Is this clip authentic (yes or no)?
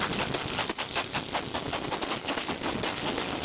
yes